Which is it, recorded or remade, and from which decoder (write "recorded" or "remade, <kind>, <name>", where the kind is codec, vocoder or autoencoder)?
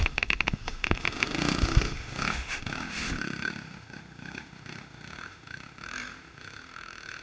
remade, autoencoder, DAC-VAE